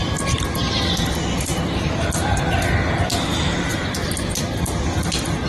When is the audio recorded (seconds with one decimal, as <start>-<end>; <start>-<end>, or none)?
0.0-5.5